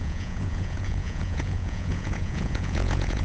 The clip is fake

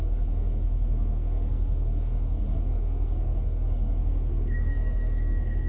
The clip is fake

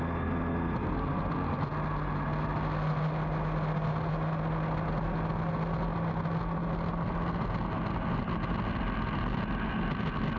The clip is real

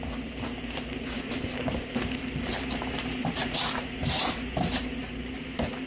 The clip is fake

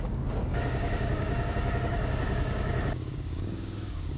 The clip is fake